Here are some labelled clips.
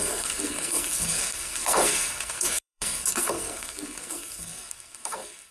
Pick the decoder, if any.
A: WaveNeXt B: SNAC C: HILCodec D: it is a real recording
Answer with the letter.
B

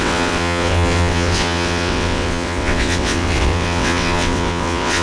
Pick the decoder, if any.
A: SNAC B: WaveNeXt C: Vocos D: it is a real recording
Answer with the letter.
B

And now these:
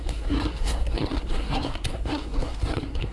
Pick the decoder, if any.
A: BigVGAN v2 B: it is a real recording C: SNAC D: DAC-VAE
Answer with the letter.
C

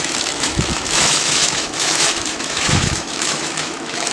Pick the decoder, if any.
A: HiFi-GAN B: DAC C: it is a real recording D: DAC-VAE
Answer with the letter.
D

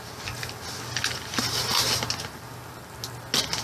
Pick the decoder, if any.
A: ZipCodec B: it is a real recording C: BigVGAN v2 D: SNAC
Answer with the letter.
B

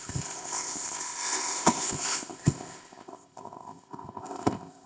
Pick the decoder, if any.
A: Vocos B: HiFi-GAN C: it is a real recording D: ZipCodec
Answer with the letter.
D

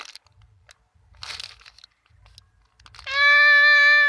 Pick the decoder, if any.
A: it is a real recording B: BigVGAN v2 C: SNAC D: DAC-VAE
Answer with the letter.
A